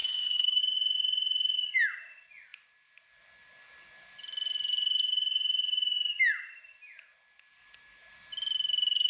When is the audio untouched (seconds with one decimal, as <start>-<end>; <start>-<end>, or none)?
0.6-9.1